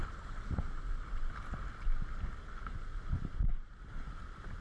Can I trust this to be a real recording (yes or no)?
yes